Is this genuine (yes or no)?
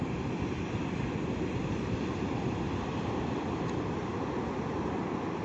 yes